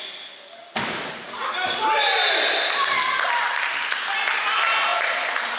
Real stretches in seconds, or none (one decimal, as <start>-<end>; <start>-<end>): 0.0-4.9